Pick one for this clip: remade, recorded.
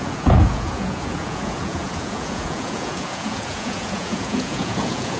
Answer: remade